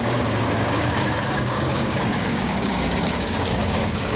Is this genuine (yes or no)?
no